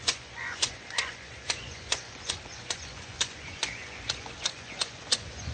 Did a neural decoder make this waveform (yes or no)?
yes